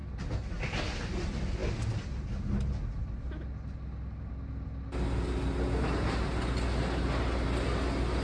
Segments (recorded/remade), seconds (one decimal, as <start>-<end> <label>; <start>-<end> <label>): 0.0-8.2 recorded